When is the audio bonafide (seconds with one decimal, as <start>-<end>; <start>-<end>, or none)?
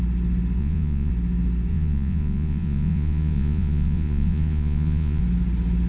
0.0-0.6; 1.1-1.7; 5.2-5.9